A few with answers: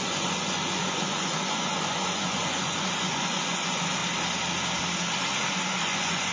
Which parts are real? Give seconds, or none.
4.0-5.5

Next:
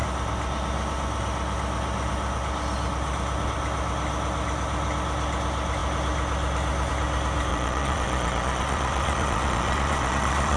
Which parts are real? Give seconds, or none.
0.0-7.5

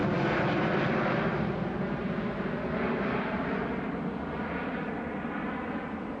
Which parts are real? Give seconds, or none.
0.0-6.2

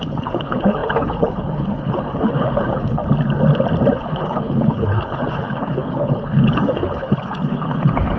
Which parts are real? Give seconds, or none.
3.0-4.0